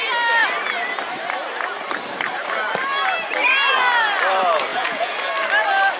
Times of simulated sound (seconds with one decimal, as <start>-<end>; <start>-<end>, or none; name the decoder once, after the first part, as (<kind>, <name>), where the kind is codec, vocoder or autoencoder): 4.7-5.2 (vocoder, Vocos)